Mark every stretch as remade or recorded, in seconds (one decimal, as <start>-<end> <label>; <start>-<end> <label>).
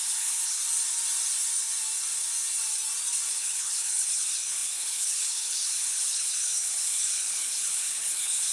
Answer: 0.0-0.6 remade; 0.6-3.3 recorded; 3.3-8.5 remade